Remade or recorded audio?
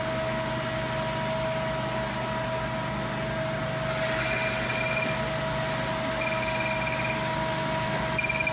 recorded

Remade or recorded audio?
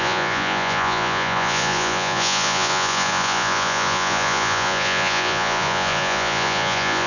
remade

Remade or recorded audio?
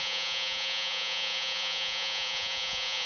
remade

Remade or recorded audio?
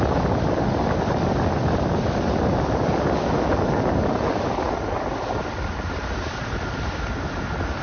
recorded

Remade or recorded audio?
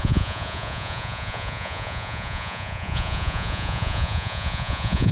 remade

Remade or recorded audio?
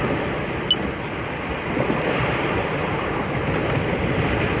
recorded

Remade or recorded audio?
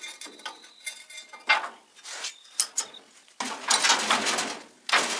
recorded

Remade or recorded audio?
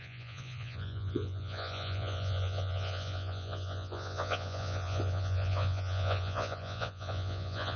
remade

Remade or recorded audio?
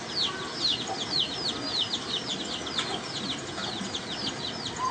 recorded